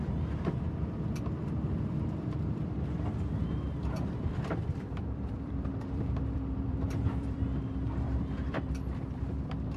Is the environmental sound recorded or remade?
remade